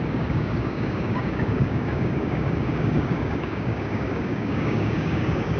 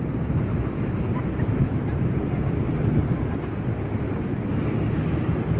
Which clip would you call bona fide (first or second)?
second